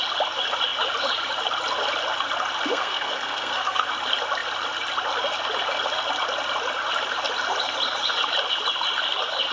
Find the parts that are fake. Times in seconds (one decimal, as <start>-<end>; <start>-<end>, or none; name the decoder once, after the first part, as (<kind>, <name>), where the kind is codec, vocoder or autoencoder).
2.7-3.9 (codec, SNAC)